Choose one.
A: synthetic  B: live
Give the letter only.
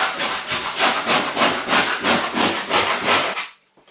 B